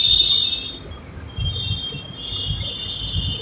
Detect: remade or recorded recorded